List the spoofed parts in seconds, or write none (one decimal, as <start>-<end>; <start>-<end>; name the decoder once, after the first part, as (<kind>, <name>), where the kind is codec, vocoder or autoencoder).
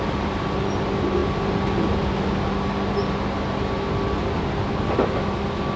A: none